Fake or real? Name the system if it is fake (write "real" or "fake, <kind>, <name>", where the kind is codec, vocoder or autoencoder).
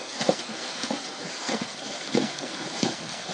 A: fake, codec, SNAC